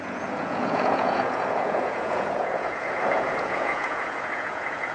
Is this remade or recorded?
remade